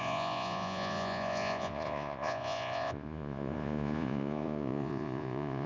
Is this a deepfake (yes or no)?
yes